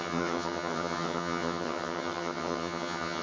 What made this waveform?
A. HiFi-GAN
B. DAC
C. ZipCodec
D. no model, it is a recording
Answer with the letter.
A